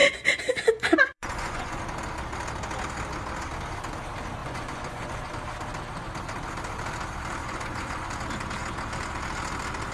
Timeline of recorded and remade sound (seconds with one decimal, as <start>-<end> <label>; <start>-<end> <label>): 0.0-1.8 remade; 1.8-4.4 recorded; 4.4-5.3 remade; 5.3-7.4 recorded; 7.4-8.1 remade; 8.1-9.9 recorded